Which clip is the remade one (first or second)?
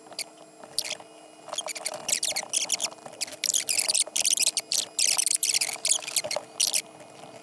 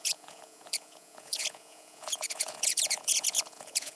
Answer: second